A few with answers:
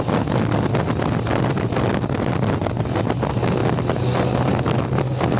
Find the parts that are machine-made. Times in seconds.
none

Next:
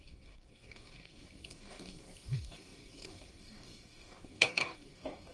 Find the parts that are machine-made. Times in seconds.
0.0-5.3 (codec, DAC)

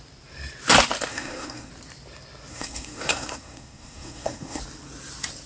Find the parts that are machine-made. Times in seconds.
1.1-1.7 (codec, SNAC); 2.5-4.6

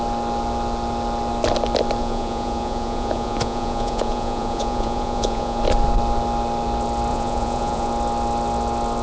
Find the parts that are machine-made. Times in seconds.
2.0-5.6 (vocoder, Vocos); 7.1-7.9

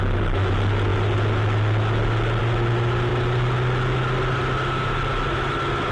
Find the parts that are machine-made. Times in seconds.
none

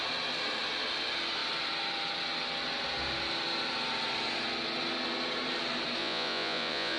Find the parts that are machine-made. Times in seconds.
6.0-7.0 (vocoder, Vocos)

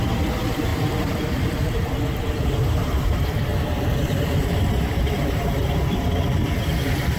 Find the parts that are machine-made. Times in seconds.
0.7-1.9 (vocoder, BigVGAN v2); 2.4-3.1; 3.5-5.0